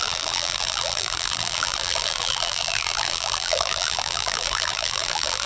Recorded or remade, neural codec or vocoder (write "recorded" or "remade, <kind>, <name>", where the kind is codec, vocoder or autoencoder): remade, vocoder, BigVGAN v2